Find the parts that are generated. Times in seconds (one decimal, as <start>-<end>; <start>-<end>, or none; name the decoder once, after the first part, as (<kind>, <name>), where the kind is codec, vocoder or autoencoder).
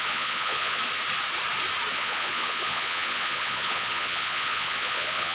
0.0-0.8 (vocoder, Vocos); 1.9-5.3